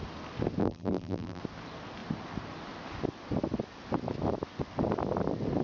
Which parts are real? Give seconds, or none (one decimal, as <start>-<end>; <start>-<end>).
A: 0.0-0.6; 1.4-5.6